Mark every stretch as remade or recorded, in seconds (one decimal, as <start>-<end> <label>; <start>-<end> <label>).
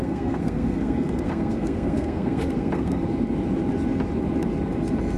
0.0-3.0 remade; 3.0-5.2 recorded